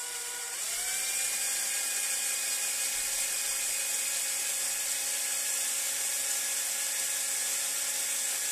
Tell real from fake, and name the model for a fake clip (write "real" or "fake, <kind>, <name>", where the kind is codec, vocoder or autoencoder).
real